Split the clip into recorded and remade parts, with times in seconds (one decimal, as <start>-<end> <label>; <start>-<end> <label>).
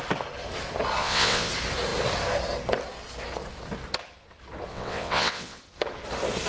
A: 0.0-1.0 recorded; 1.0-1.5 remade; 1.5-4.7 recorded; 4.7-5.6 remade; 5.6-6.5 recorded